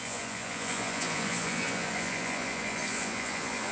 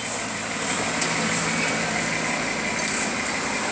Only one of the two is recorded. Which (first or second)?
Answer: second